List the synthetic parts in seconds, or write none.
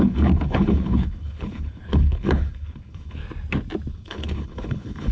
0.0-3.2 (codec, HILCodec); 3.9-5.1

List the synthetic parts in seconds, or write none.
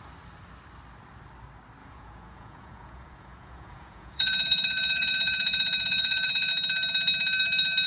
1.8-6.5 (vocoder, Vocos)